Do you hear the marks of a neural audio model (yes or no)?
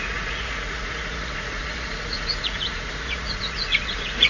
yes